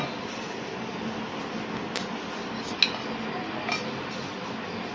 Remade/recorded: recorded